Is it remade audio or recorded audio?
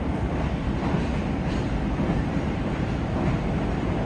recorded